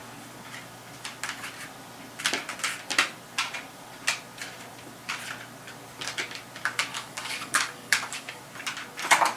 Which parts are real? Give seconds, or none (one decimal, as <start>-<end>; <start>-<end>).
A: 0.0-6.9; 8.4-9.4